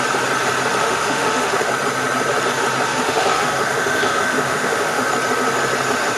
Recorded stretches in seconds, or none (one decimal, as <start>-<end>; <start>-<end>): 0.0-0.8; 1.7-2.9; 5.1-6.2